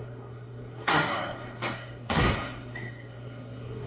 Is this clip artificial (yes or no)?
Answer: yes